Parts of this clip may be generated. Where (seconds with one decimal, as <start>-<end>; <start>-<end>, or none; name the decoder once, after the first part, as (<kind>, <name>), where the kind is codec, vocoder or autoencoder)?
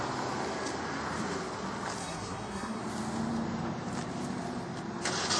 2.0-2.8 (codec, SNAC)